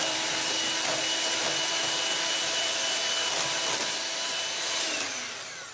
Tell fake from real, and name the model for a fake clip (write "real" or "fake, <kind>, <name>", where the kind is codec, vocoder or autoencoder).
fake, vocoder, BigVGAN v2